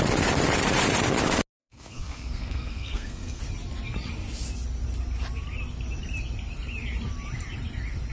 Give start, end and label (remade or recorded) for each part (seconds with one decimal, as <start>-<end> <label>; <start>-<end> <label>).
0.0-1.6 recorded; 1.6-3.4 remade; 3.4-8.1 recorded